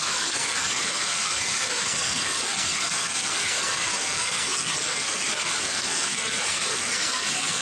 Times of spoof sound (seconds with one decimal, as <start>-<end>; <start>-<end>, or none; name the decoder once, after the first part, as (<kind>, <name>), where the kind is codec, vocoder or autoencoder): 0.0-7.6 (codec, SNAC)